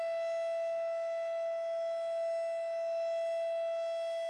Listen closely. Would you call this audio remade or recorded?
recorded